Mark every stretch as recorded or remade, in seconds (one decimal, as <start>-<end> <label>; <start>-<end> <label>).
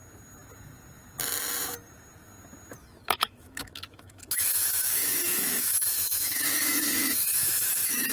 0.0-2.8 recorded; 2.8-8.1 remade